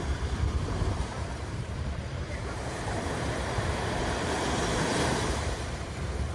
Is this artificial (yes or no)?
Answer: yes